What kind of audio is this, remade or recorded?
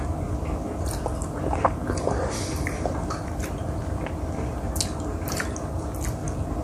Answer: recorded